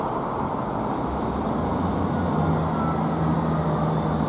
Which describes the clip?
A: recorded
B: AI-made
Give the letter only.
A